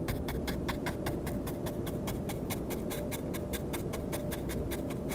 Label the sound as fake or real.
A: real